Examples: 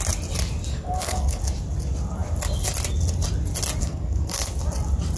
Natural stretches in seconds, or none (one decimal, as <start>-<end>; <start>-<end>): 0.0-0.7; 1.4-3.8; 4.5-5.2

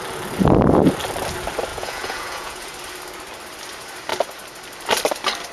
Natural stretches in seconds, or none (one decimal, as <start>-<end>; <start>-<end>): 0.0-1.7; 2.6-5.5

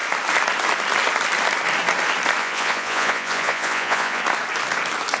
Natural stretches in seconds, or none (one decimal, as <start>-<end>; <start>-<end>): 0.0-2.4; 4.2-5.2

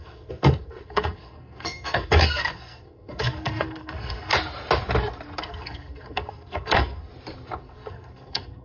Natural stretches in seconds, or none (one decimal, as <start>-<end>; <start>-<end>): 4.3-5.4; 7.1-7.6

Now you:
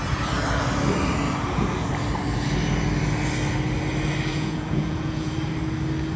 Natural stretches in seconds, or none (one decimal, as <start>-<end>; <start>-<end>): 0.0-4.3; 5.3-6.2